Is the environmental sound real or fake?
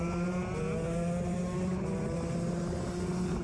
real